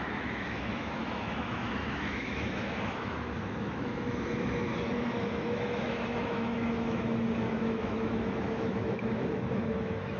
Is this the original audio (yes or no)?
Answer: no